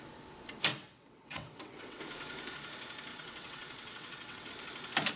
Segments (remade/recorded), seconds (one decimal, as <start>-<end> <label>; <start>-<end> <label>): 0.0-0.7 recorded; 0.7-2.0 remade; 2.0-3.1 recorded; 3.1-4.5 remade; 4.5-5.2 recorded